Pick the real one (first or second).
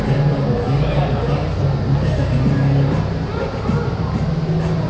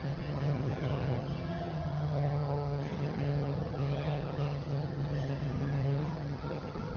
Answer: first